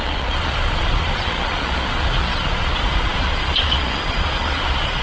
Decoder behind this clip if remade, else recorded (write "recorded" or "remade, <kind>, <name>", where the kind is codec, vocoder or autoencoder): remade, vocoder, Vocos